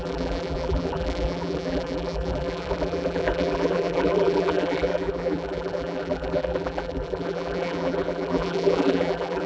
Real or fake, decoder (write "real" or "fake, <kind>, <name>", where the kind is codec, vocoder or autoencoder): fake, vocoder, BigVGAN v2